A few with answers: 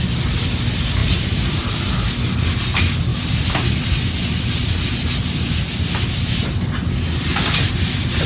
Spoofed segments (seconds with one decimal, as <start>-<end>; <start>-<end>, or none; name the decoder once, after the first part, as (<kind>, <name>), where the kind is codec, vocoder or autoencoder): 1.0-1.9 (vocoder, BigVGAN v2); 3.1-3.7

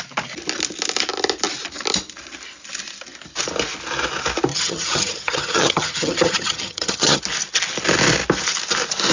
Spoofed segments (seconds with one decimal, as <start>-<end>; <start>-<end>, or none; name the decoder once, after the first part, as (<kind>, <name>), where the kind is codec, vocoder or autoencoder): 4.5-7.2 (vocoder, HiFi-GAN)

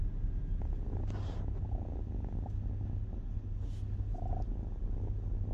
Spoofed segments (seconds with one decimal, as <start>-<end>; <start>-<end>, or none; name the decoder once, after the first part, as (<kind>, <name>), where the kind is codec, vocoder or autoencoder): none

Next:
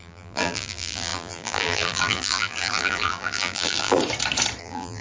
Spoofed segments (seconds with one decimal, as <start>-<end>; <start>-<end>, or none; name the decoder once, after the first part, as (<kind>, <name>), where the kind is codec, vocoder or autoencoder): 0.0-4.0 (vocoder, BigVGAN v2); 4.6-5.0

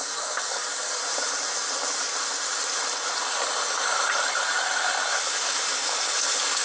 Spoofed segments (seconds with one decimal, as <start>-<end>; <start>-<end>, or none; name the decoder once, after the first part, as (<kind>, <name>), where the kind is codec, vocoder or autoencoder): 0.0-1.0 (codec, DAC); 5.0-6.6

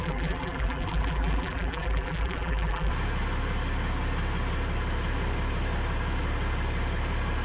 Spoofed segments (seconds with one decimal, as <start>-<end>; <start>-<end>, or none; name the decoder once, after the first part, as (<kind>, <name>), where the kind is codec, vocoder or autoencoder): 0.0-2.9 (vocoder, BigVGAN v2)

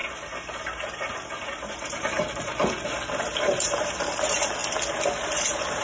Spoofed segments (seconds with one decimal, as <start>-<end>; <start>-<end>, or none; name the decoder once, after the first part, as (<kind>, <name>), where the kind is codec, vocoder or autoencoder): 0.0-2.5 (vocoder, BigVGAN v2); 3.2-4.6; 5.2-5.8

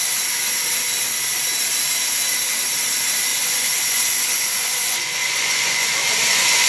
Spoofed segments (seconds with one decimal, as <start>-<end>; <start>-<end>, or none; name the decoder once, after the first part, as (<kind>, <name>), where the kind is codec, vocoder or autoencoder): 3.3-6.7 (vocoder, Vocos)